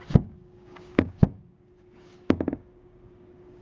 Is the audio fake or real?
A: fake